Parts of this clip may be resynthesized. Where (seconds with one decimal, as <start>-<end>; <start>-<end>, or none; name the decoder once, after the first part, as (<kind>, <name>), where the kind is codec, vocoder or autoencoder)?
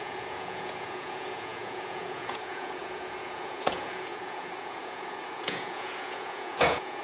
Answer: 0.0-7.0 (vocoder, Vocos)